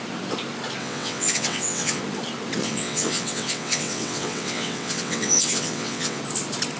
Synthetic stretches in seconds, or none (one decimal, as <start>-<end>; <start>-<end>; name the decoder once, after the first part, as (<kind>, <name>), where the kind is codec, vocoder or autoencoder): 0.8-2.0 (vocoder, WaveNeXt); 2.6-6.2